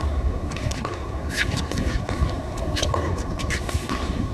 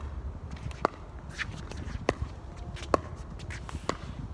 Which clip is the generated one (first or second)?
first